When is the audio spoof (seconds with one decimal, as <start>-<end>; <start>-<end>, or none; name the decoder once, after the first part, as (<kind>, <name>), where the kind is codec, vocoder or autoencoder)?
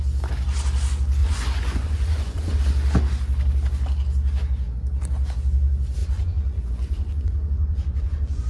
1.2-2.6 (vocoder, Vocos); 6.0-8.5